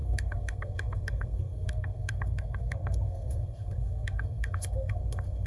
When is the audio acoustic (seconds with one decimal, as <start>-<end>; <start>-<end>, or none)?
none